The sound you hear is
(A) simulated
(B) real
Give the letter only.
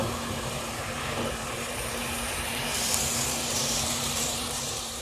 A